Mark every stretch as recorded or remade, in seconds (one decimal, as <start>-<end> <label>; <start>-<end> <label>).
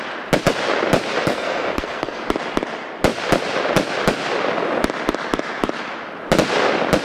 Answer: 0.0-1.2 recorded; 1.2-2.2 remade; 2.2-7.0 recorded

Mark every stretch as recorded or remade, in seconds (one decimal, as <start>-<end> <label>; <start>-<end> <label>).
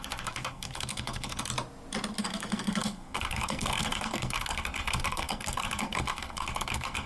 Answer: 0.0-1.5 remade; 1.5-2.2 recorded; 2.2-7.1 remade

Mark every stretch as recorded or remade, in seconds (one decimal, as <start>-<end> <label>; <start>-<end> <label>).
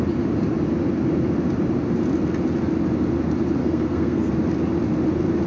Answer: 0.0-3.6 recorded; 3.6-4.3 remade; 4.3-5.5 recorded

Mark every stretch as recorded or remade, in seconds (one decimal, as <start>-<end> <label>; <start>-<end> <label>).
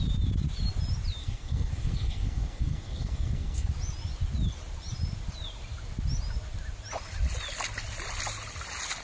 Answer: 0.0-1.2 recorded; 1.2-3.7 remade; 3.7-9.0 recorded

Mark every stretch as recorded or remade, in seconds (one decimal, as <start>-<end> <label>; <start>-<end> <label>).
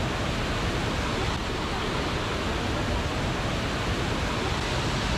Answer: 0.0-5.2 recorded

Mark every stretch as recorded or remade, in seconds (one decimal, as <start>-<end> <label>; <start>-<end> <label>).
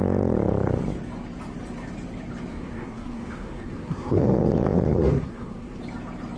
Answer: 0.0-2.5 recorded; 2.5-4.2 remade; 4.2-4.9 recorded; 4.9-5.8 remade; 5.8-6.4 recorded